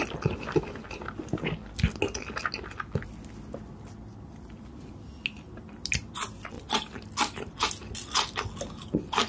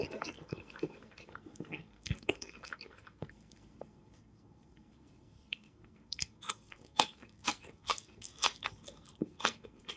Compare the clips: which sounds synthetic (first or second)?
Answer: second